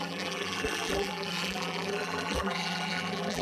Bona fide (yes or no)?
no